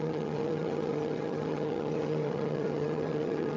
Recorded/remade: remade